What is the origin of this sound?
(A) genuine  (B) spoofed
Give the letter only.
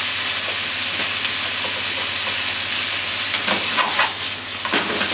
A